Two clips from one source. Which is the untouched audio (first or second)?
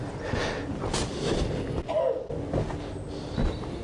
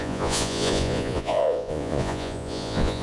first